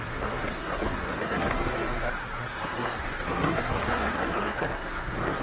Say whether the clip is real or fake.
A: fake